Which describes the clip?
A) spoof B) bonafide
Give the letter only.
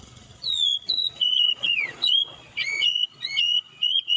A